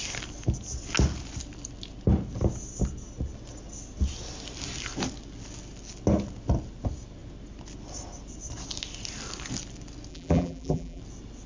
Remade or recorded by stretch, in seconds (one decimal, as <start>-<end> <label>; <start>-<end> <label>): 0.0-10.1 recorded; 10.1-11.0 remade; 11.0-11.5 recorded